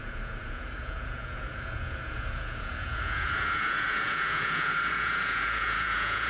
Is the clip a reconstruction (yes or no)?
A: yes